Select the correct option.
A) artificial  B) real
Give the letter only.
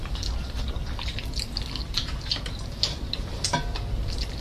B